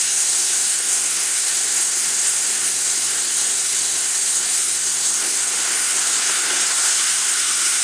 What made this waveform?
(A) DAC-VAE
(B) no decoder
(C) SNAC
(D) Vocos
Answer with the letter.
C